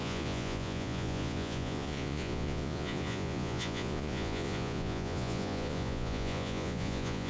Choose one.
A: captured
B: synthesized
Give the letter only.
B